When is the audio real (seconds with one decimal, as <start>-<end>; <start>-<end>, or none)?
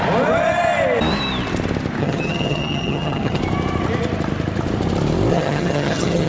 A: 0.0-2.0; 3.4-5.3